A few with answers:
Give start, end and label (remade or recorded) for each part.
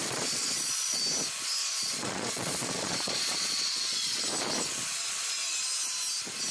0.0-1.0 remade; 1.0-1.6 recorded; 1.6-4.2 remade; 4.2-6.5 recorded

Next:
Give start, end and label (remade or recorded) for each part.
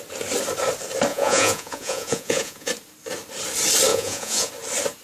0.0-1.1 recorded; 1.1-2.7 remade; 2.7-3.9 recorded; 3.9-4.5 remade; 4.5-5.0 recorded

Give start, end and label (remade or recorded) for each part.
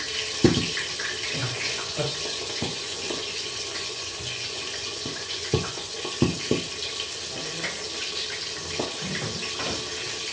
0.0-1.4 recorded; 1.4-6.1 remade; 6.1-10.3 recorded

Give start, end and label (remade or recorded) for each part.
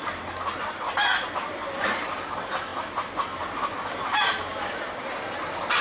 0.0-5.8 recorded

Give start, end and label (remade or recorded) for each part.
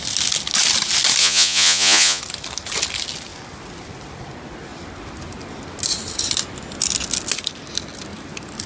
0.0-1.2 recorded; 1.2-2.2 remade; 2.2-8.7 recorded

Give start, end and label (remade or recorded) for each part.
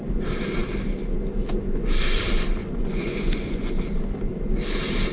0.0-2.6 recorded; 2.6-3.7 remade; 3.7-5.1 recorded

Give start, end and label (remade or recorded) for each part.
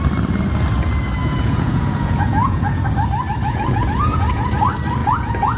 0.0-1.2 recorded; 1.2-2.8 remade; 2.8-3.4 recorded; 3.4-4.6 remade; 4.6-5.0 recorded; 5.0-5.6 remade